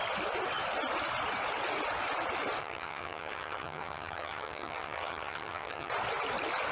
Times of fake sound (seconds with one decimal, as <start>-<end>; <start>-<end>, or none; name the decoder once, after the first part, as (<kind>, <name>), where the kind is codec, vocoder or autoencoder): 2.6-5.9 (vocoder, HiFi-GAN)